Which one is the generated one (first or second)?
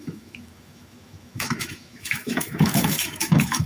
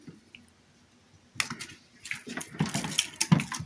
first